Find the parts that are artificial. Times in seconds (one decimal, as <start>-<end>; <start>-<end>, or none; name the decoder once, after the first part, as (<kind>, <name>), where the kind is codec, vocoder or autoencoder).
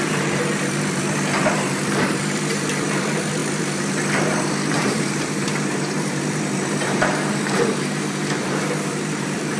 0.0-9.6 (vocoder, BigVGAN v2)